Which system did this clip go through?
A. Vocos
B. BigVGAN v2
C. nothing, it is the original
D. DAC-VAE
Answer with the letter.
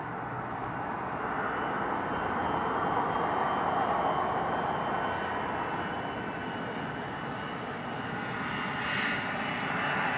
C